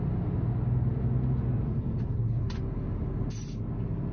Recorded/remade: recorded